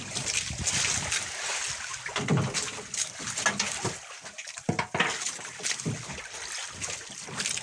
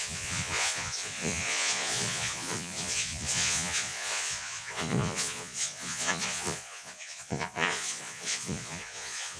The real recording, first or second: first